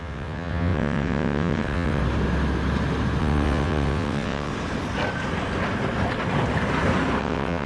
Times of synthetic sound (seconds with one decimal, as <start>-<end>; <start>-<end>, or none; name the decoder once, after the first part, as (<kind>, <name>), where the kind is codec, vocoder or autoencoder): 0.0-2.0 (vocoder, WaveNeXt); 3.2-4.5; 7.2-7.7